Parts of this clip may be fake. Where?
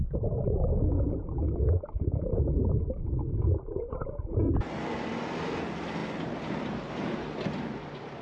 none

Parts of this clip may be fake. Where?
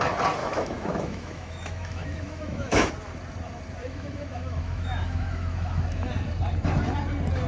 0.4-2.9 (autoencoder, DAC-VAE); 3.8-6.1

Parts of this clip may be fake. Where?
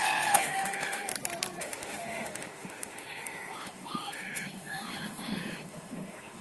0.0-1.1 (autoencoder, DAC-VAE); 1.6-6.4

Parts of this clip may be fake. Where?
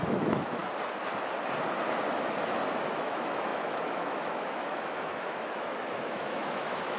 0.0-0.6 (autoencoder, DAC-VAE); 2.9-7.0